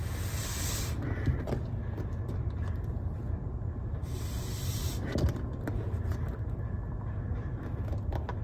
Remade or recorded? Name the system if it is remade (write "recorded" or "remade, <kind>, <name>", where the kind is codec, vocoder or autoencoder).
recorded